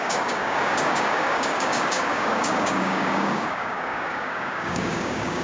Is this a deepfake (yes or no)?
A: yes